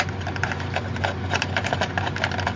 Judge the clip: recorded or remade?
recorded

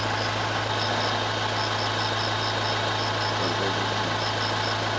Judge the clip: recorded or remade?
recorded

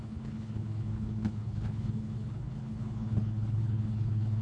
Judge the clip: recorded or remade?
remade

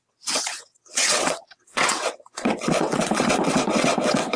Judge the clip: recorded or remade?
remade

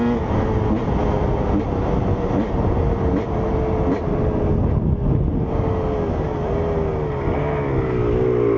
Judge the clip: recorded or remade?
recorded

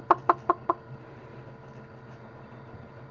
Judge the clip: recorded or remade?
recorded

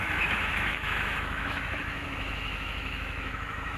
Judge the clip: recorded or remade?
remade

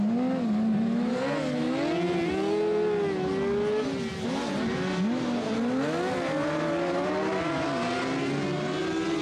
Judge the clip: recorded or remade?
recorded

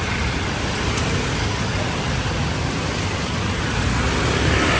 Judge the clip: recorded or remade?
recorded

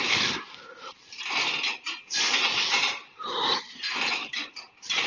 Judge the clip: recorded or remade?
remade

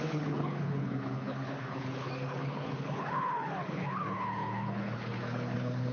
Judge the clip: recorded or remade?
remade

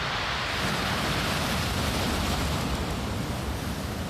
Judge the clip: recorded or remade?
recorded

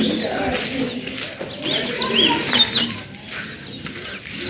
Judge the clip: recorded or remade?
recorded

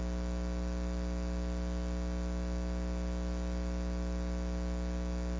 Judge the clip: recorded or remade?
recorded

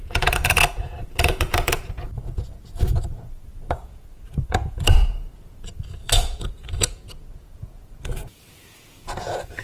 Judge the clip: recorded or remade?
remade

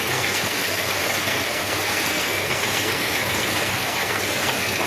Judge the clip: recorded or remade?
remade